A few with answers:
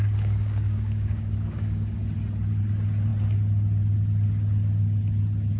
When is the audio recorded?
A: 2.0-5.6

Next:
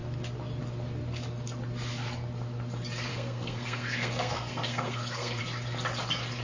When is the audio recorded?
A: 0.0-3.1; 5.4-6.4